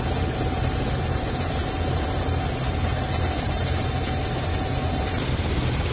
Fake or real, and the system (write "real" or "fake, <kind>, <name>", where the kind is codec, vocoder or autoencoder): real